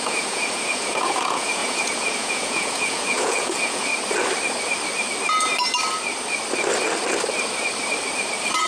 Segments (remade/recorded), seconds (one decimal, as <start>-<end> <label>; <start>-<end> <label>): 0.0-3.9 remade; 3.9-8.7 recorded